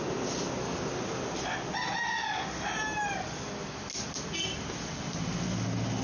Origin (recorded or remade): recorded